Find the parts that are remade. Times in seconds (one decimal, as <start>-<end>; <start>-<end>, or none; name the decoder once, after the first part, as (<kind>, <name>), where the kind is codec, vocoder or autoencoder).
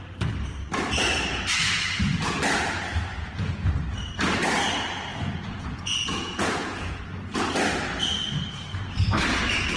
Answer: 3.1-3.7 (vocoder, Vocos); 5.1-7.0